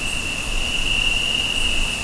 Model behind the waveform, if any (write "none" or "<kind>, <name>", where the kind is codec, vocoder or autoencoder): none